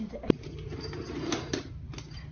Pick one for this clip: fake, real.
real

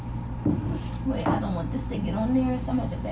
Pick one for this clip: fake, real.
real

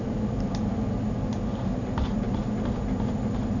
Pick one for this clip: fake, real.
real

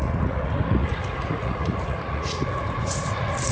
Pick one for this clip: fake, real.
fake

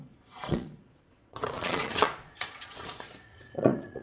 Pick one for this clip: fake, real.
fake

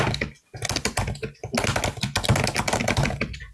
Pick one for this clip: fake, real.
real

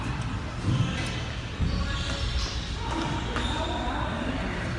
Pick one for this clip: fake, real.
real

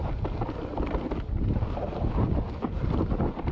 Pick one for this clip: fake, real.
real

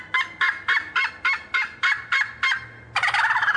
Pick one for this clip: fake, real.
real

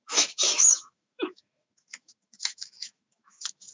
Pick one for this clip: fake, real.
fake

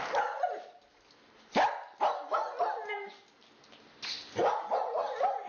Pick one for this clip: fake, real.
real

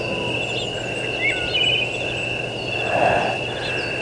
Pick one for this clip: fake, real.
real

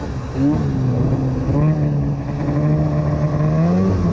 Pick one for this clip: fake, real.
real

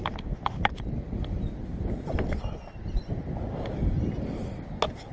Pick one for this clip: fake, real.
real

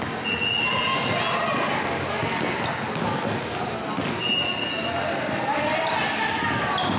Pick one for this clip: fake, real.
real